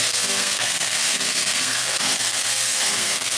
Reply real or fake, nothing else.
fake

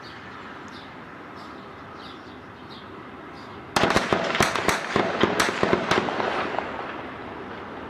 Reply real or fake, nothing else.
real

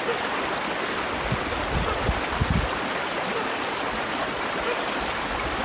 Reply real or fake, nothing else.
real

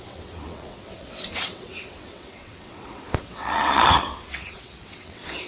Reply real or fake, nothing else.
fake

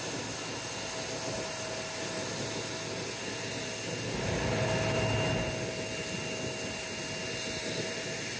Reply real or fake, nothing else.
real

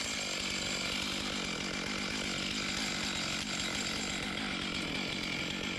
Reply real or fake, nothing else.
real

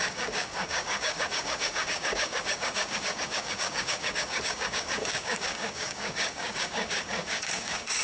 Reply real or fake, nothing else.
fake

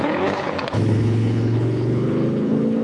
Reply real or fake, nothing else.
fake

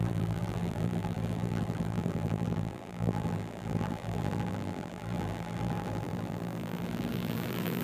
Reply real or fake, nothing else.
fake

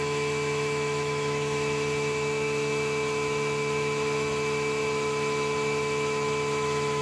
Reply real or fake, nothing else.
fake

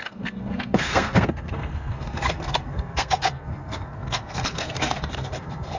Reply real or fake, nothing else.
fake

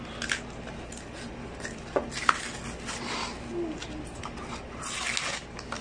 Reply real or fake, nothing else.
real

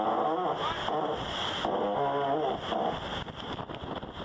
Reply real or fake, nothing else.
real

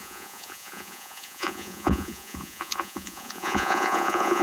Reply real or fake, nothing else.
fake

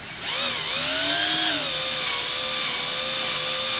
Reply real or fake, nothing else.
real